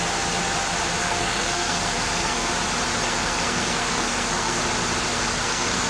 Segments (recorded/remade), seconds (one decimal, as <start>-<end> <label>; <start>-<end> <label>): 0.0-1.0 recorded; 1.0-2.5 remade; 2.5-3.0 recorded; 3.0-4.6 remade; 4.6-5.1 recorded; 5.1-5.9 remade